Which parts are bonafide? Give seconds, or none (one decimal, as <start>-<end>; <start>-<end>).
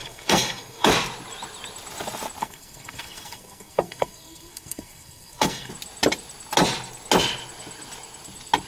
0.9-2.4; 5.7-8.7